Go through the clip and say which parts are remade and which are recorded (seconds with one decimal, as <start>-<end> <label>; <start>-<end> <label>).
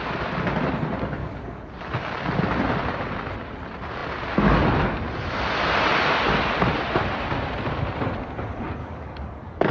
0.0-1.2 recorded; 1.2-1.8 remade; 1.8-8.8 recorded; 8.8-9.7 remade